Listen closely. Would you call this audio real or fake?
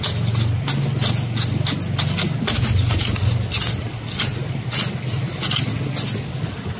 real